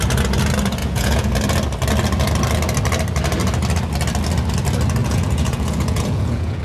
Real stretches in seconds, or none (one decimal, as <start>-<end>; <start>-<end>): 0.0-0.8; 1.3-5.0